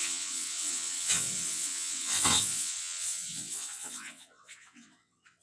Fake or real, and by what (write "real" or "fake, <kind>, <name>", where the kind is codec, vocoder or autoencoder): fake, vocoder, WaveNeXt